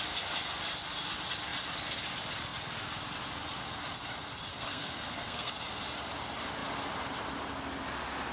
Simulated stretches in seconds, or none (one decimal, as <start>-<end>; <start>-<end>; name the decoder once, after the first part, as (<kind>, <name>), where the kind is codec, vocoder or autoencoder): 4.5-5.5 (codec, SNAC)